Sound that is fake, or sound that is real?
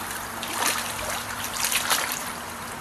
fake